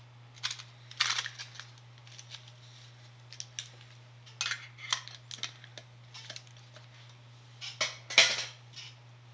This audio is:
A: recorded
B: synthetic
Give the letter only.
A